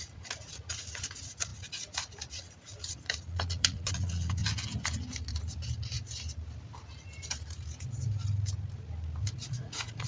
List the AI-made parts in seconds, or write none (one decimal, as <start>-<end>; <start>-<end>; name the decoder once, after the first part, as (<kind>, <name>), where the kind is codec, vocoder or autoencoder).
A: 0.0-4.4 (vocoder, Vocos); 9.5-10.1